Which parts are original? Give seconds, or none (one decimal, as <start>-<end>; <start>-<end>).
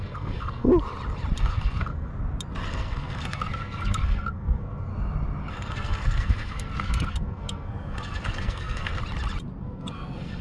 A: 0.7-1.4; 2.1-2.7; 4.9-5.5; 9.0-9.6